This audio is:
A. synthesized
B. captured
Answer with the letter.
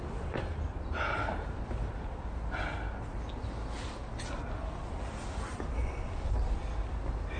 B